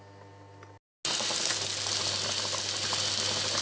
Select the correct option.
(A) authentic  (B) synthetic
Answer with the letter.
A